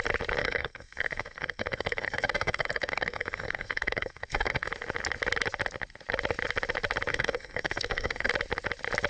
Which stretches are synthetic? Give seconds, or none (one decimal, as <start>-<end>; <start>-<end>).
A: 0.4-4.7; 7.1-8.3